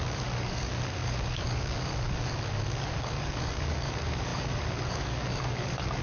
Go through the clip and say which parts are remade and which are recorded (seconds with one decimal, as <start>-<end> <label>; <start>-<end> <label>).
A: 0.0-6.0 remade